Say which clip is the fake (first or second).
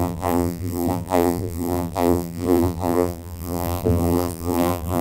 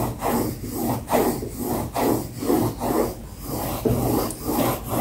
first